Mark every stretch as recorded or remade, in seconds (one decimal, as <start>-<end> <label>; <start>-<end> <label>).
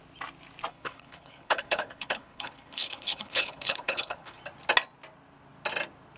0.0-0.7 recorded; 0.7-4.4 remade; 4.4-6.2 recorded